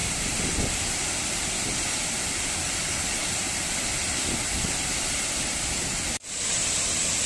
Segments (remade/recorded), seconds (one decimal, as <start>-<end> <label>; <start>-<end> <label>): 0.0-5.9 remade; 5.9-6.5 recorded; 6.5-7.3 remade